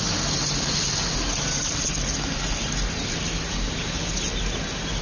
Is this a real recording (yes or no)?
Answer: yes